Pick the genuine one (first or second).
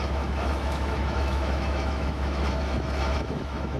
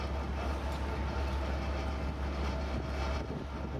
second